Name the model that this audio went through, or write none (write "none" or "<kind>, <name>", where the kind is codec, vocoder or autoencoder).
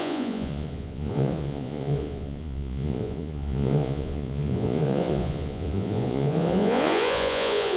vocoder, Vocos